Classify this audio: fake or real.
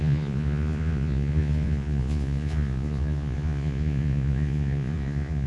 fake